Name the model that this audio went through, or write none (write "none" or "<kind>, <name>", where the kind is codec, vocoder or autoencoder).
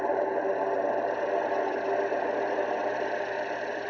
none